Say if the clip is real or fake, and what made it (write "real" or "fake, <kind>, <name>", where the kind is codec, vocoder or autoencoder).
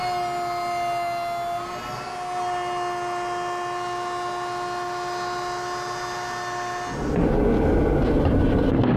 real